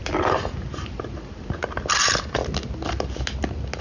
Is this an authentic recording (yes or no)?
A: yes